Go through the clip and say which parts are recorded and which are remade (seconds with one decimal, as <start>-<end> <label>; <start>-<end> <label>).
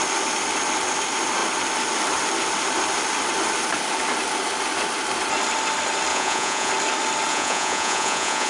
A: 0.0-6.1 recorded; 6.1-6.7 remade; 6.7-7.3 recorded; 7.3-8.5 remade